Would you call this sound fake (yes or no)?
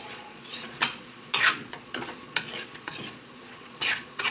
yes